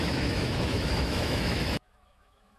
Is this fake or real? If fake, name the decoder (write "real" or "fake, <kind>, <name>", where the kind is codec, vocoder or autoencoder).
fake, autoencoder, DAC-VAE